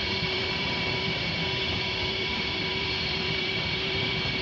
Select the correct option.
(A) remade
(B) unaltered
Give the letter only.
A